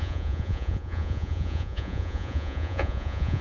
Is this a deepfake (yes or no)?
yes